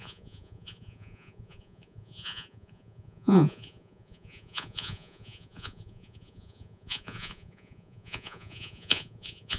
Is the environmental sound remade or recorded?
remade